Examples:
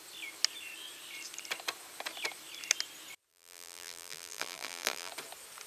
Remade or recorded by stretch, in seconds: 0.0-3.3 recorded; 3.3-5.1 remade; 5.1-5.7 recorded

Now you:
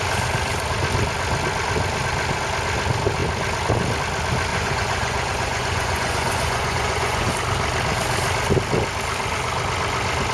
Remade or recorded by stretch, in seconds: 0.0-4.5 recorded; 4.5-7.3 remade; 7.3-10.3 recorded